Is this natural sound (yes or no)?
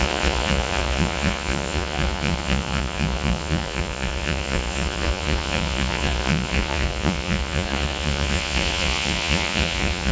no